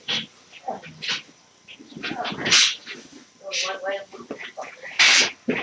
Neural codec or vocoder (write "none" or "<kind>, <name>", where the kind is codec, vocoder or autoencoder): none